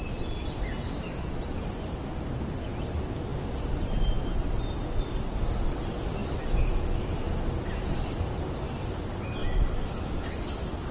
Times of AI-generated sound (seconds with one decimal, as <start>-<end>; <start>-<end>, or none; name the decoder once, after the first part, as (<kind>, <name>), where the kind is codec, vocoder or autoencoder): none